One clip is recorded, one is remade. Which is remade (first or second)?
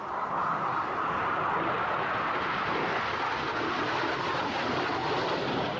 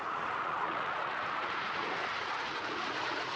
second